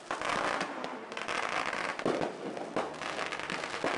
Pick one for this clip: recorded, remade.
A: recorded